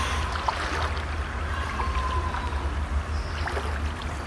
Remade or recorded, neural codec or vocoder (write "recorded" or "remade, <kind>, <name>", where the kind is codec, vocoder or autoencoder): recorded